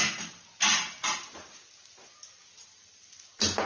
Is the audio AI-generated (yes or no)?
no